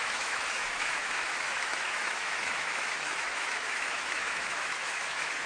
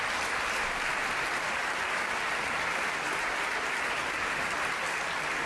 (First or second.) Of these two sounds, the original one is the second